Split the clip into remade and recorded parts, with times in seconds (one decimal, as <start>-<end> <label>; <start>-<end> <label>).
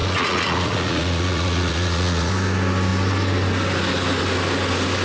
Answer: 0.0-2.3 remade; 2.3-5.0 recorded